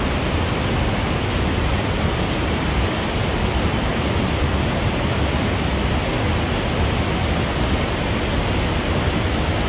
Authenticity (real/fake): real